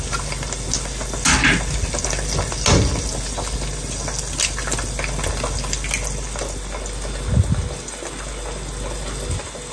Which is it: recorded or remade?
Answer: recorded